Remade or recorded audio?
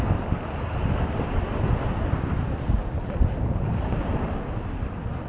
recorded